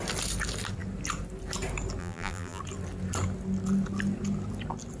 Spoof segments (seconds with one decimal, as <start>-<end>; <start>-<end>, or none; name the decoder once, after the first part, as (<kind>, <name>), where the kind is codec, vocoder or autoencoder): 2.0-2.6 (vocoder, BigVGAN v2)